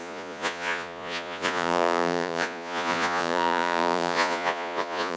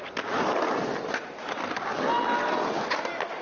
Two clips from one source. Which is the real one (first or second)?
second